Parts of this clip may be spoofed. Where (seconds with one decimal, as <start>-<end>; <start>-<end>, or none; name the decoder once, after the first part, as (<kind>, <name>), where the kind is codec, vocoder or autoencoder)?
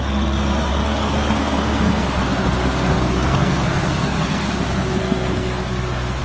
0.7-4.4 (codec, SNAC); 5.0-6.2